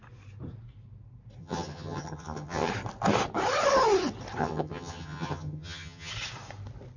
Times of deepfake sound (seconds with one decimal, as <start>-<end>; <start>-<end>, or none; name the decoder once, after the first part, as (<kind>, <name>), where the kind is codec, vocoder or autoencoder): 1.4-2.7 (vocoder, HiFi-GAN); 4.4-6.1